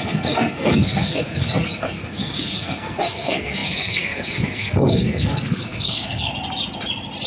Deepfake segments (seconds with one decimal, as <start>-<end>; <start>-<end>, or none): 0.0-6.3